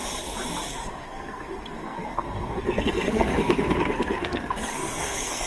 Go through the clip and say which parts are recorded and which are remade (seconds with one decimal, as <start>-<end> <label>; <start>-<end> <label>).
0.0-0.7 recorded; 0.7-5.5 remade

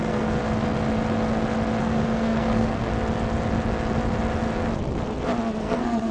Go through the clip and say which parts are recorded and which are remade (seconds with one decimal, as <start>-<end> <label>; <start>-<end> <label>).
0.0-0.4 remade; 0.4-1.8 recorded; 1.8-2.9 remade; 2.9-5.6 recorded; 5.6-6.1 remade